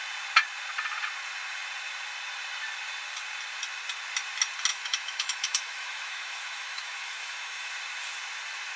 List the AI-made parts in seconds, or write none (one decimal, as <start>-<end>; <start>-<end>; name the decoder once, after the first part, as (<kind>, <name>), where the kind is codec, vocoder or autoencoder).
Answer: 4.7-7.7 (autoencoder, DAC-VAE)